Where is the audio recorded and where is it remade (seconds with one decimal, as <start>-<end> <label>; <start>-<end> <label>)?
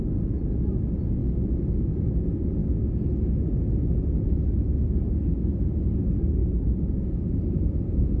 0.0-6.4 recorded; 6.4-7.7 remade; 7.7-8.2 recorded